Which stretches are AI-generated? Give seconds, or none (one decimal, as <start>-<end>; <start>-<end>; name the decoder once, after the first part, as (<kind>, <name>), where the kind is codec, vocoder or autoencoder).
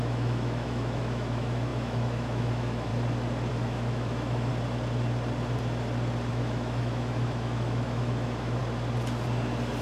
0.0-2.9 (autoencoder, DAC-VAE); 3.5-4.5; 6.3-8.6